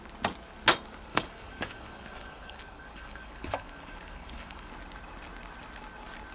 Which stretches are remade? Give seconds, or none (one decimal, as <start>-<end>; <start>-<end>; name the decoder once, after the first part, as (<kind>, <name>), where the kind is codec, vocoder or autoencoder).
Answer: 1.1-4.7 (codec, DAC)